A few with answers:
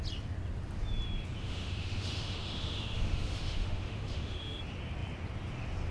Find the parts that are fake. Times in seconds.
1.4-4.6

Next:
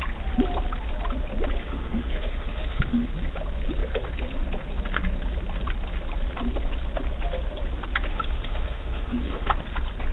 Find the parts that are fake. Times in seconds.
1.6-3.1; 8.1-9.5

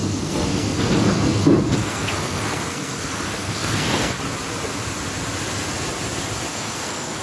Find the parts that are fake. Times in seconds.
0.0-4.2; 6.5-7.2

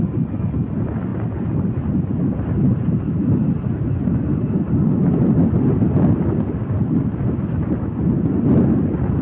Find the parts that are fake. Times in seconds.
none

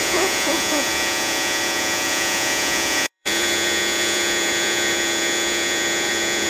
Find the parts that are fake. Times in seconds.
0.0-6.5